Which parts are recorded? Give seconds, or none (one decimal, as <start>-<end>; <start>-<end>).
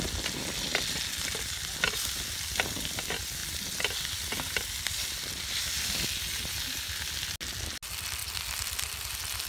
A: 0.0-9.5